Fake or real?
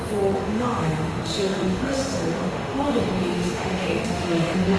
fake